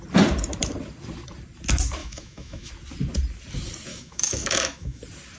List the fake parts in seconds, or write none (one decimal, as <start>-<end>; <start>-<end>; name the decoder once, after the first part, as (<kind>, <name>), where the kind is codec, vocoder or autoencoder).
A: 2.0-2.7 (autoencoder, DAC-VAE); 3.9-5.0